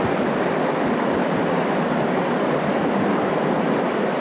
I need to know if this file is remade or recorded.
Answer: recorded